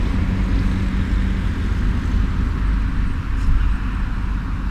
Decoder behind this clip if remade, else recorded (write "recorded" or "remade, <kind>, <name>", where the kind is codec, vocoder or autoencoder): recorded